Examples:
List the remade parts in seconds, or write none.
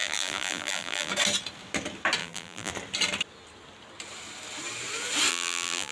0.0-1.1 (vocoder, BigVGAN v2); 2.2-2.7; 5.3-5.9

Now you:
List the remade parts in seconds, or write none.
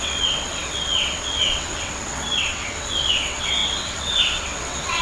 0.0-5.0 (vocoder, WaveNeXt)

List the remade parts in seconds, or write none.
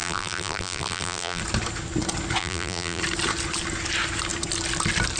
0.0-1.4 (vocoder, BigVGAN v2); 2.4-3.0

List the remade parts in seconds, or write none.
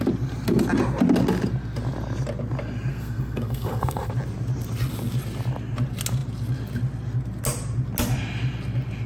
2.9-4.1 (codec, SNAC)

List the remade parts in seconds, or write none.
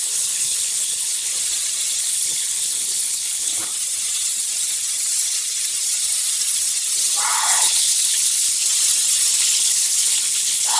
0.0-1.3 (codec, HILCodec); 2.0-3.7; 7.3-8.7; 9.3-10.8